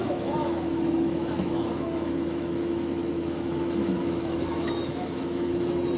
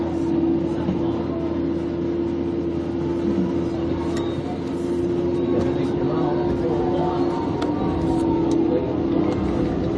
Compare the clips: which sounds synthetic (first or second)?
first